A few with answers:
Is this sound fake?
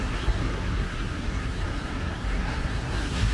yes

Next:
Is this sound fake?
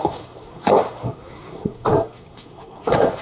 yes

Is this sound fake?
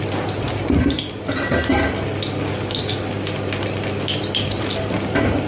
no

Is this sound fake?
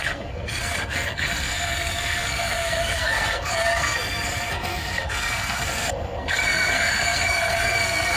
yes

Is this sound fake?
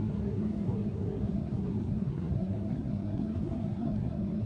yes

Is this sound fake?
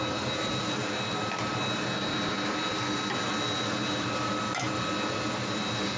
no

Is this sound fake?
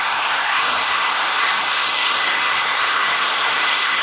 yes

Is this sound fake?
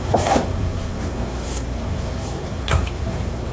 yes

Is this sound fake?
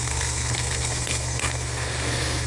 yes